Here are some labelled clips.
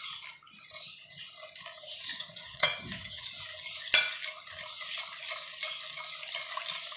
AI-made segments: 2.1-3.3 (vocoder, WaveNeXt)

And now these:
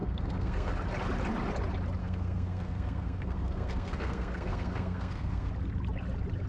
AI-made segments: 0.0-0.7 (codec, SNAC); 2.0-5.5

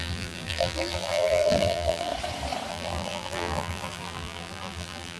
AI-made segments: 0.0-2.1 (vocoder, BigVGAN v2); 2.7-5.2

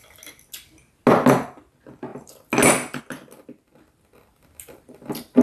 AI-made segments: none

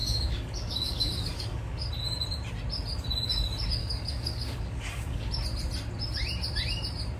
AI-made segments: 0.0-1.9 (codec, DAC); 3.8-5.3